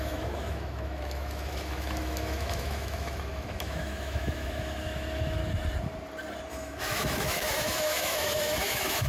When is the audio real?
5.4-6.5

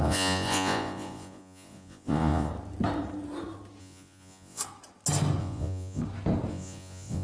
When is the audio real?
2.5-3.8; 4.6-5.4; 6.0-6.5

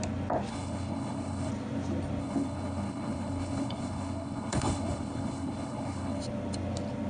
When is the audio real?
0.0-0.5; 1.5-2.2; 6.2-7.1

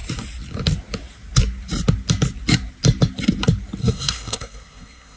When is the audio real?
0.0-3.8